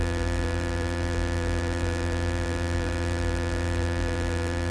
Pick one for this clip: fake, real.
fake